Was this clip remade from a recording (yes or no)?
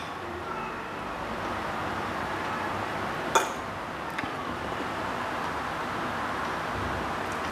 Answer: no